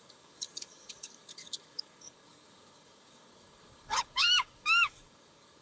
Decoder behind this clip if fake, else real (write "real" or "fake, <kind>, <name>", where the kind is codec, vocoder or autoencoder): fake, codec, DAC